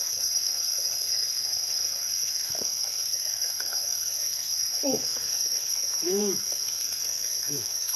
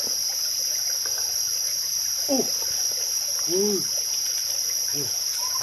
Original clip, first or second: second